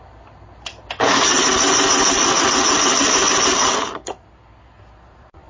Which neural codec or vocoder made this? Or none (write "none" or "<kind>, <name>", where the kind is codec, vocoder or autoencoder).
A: none